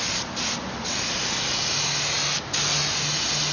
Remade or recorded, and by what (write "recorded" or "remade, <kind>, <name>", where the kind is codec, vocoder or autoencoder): recorded